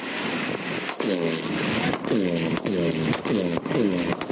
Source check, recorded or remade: recorded